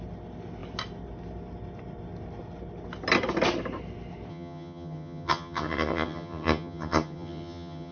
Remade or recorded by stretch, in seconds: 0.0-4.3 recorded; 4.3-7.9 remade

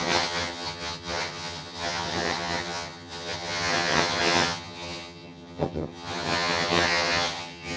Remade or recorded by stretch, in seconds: 0.0-7.8 remade

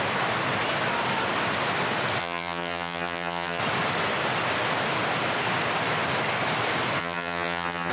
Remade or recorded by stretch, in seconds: 0.0-2.2 recorded; 2.2-3.6 remade; 3.6-7.0 recorded; 7.0-7.9 remade

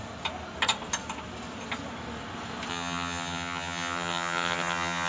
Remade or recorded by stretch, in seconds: 0.0-2.7 recorded; 2.7-5.1 remade